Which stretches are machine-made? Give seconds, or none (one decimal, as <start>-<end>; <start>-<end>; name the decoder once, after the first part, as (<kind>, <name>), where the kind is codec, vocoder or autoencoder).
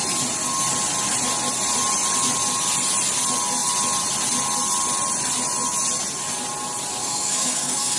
7.0-8.0 (codec, SNAC)